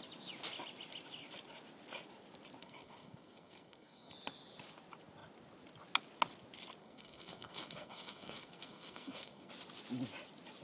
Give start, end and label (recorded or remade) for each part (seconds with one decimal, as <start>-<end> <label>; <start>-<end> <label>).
0.0-2.6 recorded; 2.6-4.1 remade; 4.1-6.8 recorded; 6.8-9.5 remade; 9.5-10.6 recorded